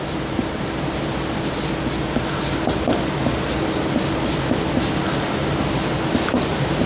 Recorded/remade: recorded